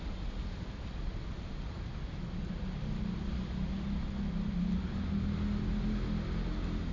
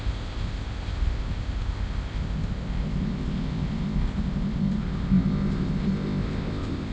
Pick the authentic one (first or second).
first